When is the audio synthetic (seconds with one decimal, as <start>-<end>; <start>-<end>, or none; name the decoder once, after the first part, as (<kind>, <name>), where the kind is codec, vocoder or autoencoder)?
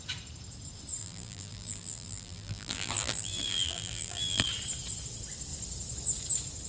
1.0-4.5 (vocoder, BigVGAN v2)